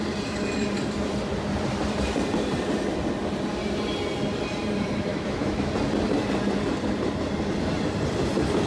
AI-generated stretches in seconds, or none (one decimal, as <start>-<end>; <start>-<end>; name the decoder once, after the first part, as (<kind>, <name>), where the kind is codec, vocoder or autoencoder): 5.1-5.7 (autoencoder, DAC-VAE)